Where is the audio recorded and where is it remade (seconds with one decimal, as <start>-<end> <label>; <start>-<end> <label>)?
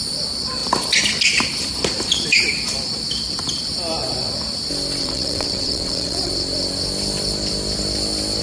0.0-5.0 recorded; 5.0-6.3 remade; 6.3-8.4 recorded